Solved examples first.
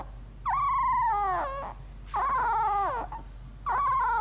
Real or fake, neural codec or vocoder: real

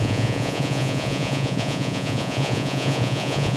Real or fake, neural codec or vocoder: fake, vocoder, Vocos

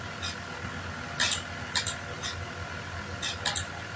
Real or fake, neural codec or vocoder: real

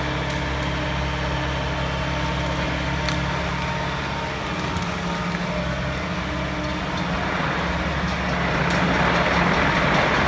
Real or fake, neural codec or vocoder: real